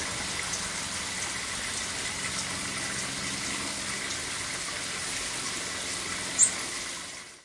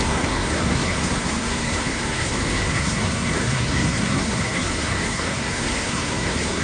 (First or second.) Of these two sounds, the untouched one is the first